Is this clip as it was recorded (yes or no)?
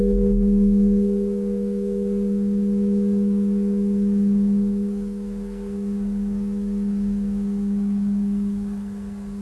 no